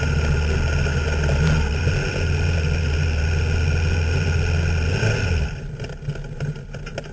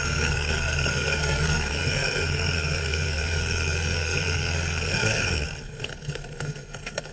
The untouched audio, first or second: first